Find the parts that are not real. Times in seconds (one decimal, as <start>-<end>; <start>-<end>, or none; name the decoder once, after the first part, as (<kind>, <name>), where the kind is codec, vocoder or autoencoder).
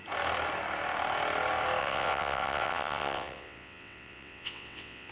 1.8-5.1 (vocoder, WaveNeXt)